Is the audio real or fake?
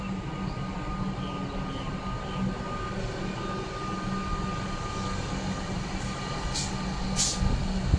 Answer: real